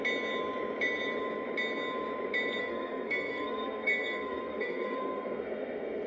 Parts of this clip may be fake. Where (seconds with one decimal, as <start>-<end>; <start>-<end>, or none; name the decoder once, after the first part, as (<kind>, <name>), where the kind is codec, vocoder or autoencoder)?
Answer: 2.6-6.1 (codec, SNAC)